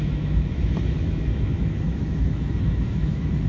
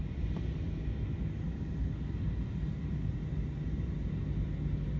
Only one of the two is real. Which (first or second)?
second